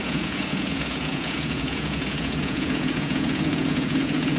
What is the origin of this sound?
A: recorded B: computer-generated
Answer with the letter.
B